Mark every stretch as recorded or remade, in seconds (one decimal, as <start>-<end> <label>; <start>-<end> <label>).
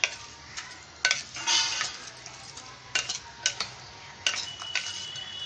0.0-5.5 recorded